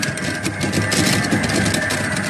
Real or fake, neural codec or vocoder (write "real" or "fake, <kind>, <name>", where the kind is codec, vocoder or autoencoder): real